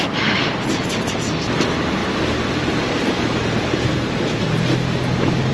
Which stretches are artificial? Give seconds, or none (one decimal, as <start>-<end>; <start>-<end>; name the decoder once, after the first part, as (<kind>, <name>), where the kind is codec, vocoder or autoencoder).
2.0-5.5 (vocoder, BigVGAN v2)